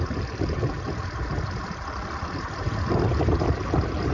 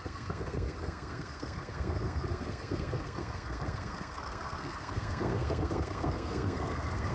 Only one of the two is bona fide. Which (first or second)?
first